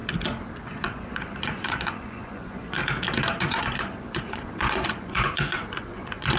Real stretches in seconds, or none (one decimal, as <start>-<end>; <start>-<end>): 0.0-0.6; 2.8-3.4